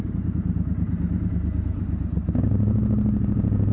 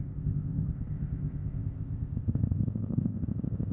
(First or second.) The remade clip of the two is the second